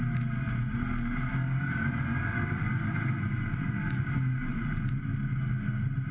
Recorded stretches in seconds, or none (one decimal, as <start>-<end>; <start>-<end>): 0.0-1.3; 5.0-6.1